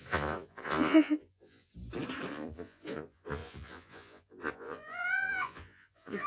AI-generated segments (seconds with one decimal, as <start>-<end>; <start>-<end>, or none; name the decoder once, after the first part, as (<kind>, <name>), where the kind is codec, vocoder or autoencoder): 0.0-1.7 (vocoder, Vocos); 2.3-6.3